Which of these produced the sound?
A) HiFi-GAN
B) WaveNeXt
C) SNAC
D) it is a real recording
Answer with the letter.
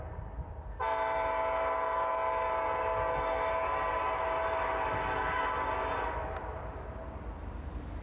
D